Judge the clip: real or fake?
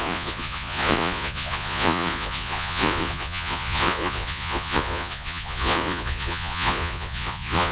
fake